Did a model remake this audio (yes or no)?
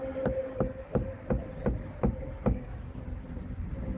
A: no